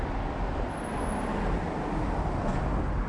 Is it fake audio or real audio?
real